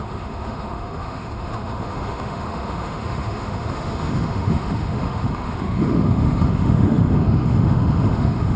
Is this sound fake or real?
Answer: fake